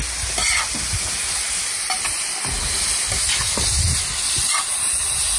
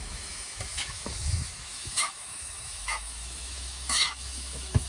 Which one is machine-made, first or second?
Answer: second